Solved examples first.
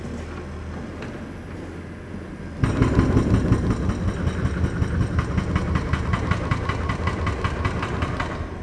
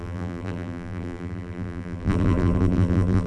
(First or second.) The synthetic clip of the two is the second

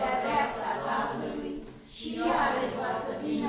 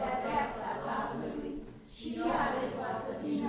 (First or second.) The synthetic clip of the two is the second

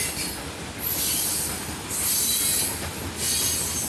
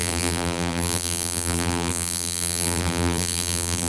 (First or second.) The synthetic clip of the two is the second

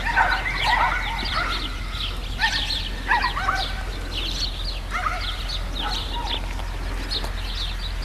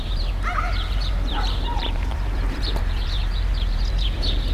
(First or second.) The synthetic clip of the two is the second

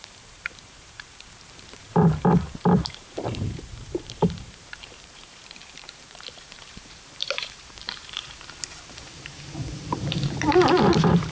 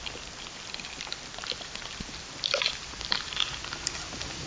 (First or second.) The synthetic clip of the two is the first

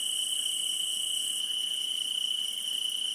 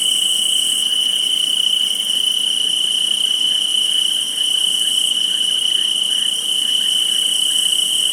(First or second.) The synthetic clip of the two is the second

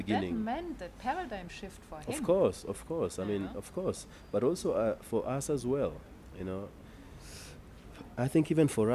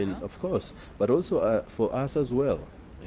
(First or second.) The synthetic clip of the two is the second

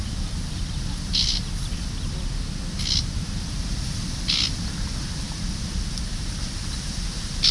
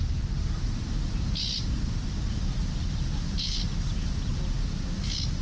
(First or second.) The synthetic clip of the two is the first